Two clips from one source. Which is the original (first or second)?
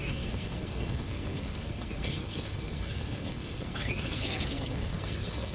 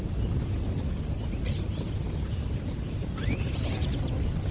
second